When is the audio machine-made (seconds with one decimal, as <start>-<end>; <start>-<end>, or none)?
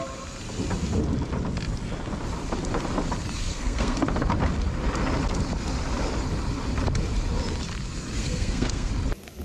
3.5-4.0; 8.2-8.9